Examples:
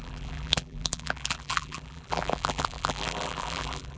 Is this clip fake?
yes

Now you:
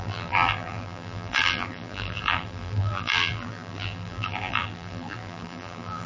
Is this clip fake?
yes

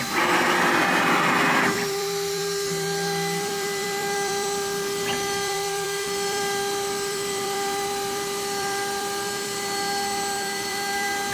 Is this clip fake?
yes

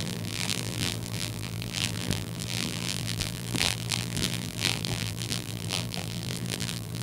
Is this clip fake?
yes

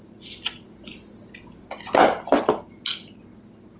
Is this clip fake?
no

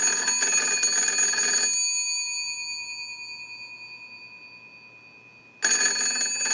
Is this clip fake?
no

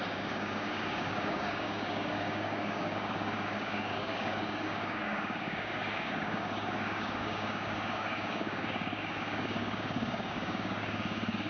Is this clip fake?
yes